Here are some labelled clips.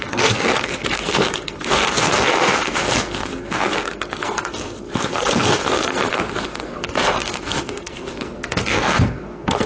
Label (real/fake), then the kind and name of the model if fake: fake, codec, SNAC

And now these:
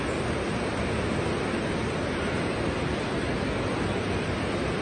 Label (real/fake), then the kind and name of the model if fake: real